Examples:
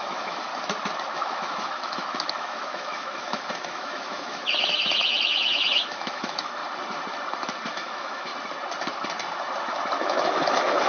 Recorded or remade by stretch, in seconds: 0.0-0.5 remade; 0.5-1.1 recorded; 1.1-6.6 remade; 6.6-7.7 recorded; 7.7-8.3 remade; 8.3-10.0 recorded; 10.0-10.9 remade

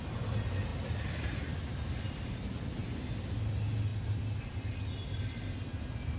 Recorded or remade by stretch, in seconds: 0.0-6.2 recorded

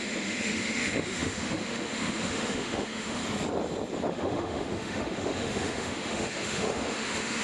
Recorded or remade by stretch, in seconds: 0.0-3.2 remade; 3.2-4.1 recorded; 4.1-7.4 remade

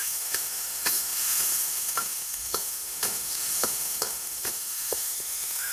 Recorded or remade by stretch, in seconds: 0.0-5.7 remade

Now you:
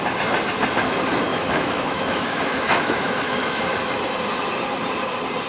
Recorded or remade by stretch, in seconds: 0.0-1.3 recorded; 1.3-3.6 remade; 3.6-5.5 recorded